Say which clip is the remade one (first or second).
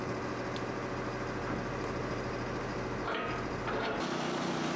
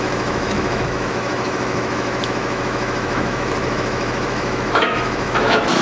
second